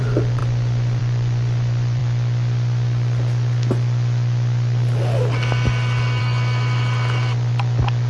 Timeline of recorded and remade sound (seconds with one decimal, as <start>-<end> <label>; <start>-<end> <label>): 0.0-0.4 remade; 0.4-1.0 recorded; 1.0-2.0 remade; 2.0-6.2 recorded; 6.2-8.1 remade